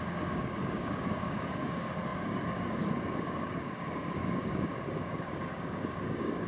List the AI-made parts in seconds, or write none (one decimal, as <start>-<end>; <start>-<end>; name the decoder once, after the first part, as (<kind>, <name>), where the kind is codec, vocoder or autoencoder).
0.0-6.5 (codec, DAC)